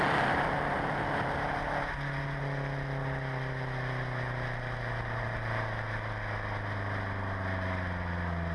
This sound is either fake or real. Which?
real